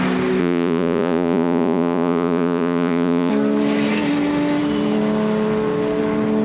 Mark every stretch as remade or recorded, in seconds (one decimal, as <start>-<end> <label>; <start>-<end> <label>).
0.0-0.4 recorded; 0.4-3.3 remade; 3.3-6.4 recorded